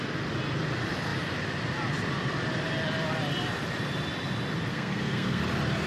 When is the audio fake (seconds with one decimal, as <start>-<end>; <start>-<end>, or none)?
4.7-5.4